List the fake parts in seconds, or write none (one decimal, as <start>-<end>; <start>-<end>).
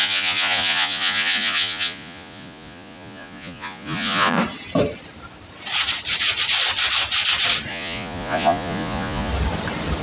0.0-4.4; 7.7-9.3